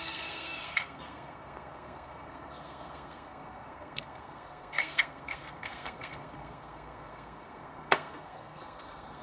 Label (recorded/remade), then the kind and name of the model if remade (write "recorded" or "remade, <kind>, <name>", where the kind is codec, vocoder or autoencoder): remade, codec, SNAC